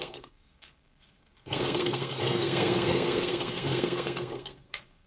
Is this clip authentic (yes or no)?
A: no